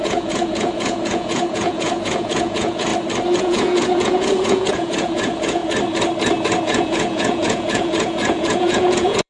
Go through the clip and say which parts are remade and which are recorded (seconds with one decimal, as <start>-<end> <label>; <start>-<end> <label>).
0.0-2.9 remade; 2.9-3.4 recorded; 3.4-5.6 remade; 5.6-6.6 recorded; 6.6-9.3 remade

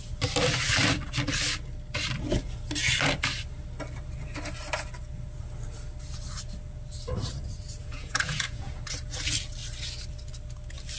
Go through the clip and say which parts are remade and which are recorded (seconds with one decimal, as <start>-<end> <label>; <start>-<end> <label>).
0.0-7.8 recorded; 7.8-8.7 remade; 8.7-11.0 recorded

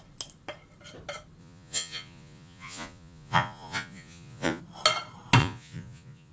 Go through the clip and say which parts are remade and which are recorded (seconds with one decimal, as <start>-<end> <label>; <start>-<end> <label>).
0.0-1.4 recorded; 1.4-4.6 remade; 4.6-5.4 recorded; 5.4-6.3 remade

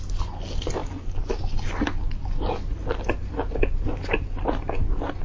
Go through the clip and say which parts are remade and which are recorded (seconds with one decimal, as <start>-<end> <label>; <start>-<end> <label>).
0.0-5.2 recorded